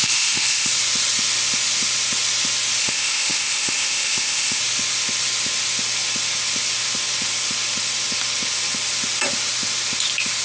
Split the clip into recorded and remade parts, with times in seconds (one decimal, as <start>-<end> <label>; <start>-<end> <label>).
0.0-0.7 remade; 0.7-2.8 recorded; 2.8-4.6 remade; 4.6-10.4 recorded